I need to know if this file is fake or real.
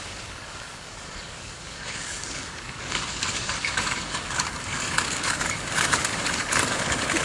fake